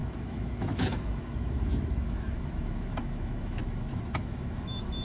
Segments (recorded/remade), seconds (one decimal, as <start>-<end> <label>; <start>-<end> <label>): 0.0-5.0 remade